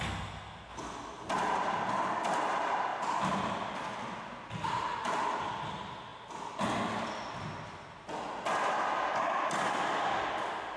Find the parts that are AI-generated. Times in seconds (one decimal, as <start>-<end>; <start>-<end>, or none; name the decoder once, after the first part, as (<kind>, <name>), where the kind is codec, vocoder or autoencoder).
none